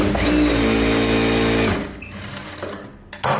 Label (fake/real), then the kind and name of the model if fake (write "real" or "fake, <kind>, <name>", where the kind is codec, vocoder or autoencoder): real